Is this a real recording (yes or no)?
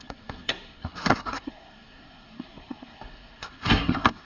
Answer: no